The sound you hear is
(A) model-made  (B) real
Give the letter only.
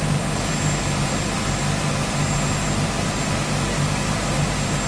B